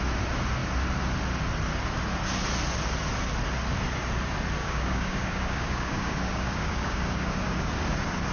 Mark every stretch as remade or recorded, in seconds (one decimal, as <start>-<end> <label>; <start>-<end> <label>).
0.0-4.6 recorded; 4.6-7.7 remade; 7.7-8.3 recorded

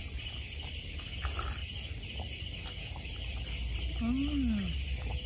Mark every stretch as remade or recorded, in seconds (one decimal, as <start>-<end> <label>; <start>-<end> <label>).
0.0-5.3 recorded

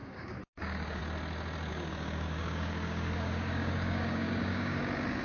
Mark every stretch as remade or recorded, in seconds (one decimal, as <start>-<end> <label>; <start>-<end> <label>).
0.0-1.0 remade; 1.0-1.7 recorded; 1.7-4.8 remade; 4.8-5.2 recorded

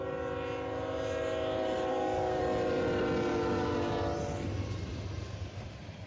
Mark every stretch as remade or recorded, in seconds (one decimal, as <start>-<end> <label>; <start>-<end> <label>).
0.0-1.9 recorded; 1.9-2.4 remade; 2.4-3.3 recorded; 3.3-3.9 remade; 3.9-6.1 recorded